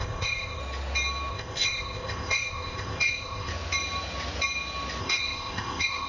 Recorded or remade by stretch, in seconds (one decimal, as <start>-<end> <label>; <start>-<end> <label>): 0.0-0.6 remade; 0.6-1.3 recorded; 1.3-3.5 remade; 3.5-5.0 recorded; 5.0-6.1 remade